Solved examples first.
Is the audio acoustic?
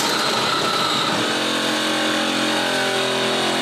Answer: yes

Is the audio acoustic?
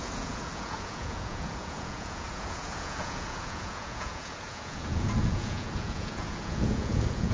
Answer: no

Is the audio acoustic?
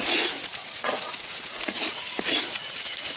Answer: no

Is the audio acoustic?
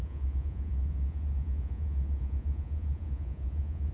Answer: no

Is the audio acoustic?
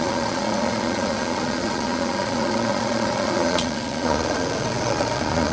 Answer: no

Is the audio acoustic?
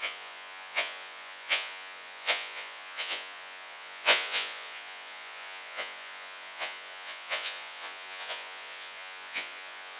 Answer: no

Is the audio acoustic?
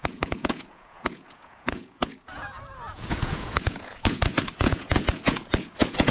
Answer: no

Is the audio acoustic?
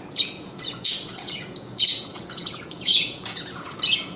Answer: no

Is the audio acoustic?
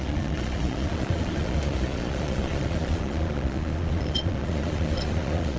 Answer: no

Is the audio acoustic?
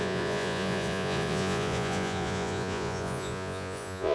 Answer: no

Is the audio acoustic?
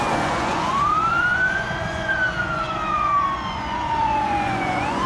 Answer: no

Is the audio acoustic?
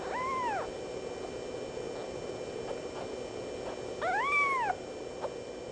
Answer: yes